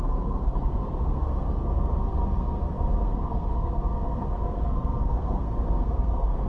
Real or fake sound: fake